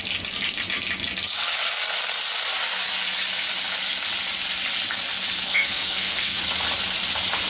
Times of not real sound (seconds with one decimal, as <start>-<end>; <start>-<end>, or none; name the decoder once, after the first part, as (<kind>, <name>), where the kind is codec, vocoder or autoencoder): 5.5-6.4 (codec, SNAC)